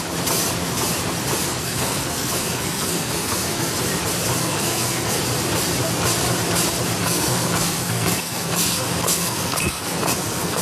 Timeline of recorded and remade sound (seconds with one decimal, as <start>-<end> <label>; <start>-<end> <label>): 0.0-1.4 recorded; 1.4-3.7 remade; 3.7-4.4 recorded; 4.4-5.2 remade; 5.2-7.0 recorded; 7.0-10.6 remade